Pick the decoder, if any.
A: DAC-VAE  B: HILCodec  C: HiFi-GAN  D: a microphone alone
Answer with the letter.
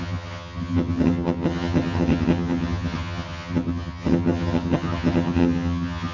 C